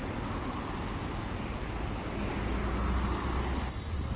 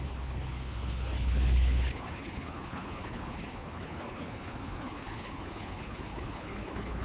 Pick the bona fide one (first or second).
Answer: first